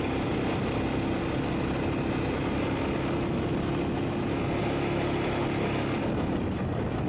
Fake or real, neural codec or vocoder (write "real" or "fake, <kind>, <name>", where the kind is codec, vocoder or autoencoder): real